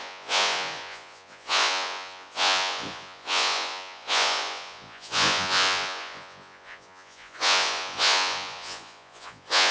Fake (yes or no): yes